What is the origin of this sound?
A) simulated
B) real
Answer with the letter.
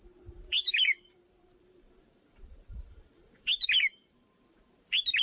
A